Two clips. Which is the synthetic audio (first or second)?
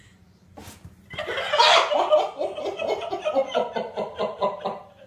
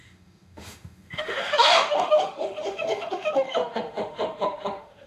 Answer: second